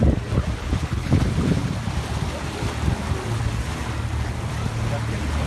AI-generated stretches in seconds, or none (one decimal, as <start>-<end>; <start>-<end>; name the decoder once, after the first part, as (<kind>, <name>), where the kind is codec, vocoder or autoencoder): 0.6-1.2 (codec, HILCodec)